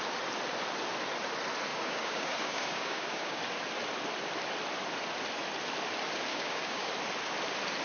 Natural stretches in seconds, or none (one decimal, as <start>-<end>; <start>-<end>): 0.0-1.7; 3.4-6.3; 6.9-7.8

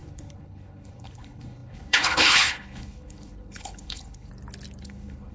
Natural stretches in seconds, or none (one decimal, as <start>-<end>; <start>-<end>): 4.3-4.8

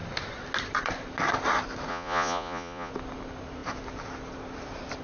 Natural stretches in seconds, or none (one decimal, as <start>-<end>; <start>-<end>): 0.0-1.9; 2.9-5.0

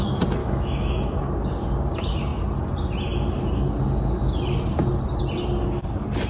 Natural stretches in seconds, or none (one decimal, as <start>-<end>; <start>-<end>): 0.0-0.4; 1.2-6.3